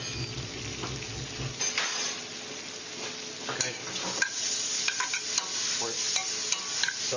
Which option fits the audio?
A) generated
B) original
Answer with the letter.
B